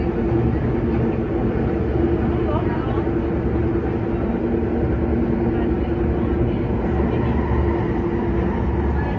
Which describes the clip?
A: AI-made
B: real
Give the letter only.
B